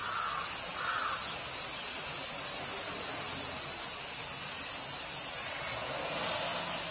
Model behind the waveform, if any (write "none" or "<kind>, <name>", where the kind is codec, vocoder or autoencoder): none